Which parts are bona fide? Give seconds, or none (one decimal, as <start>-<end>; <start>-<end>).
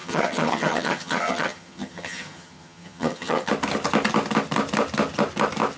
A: 3.5-5.8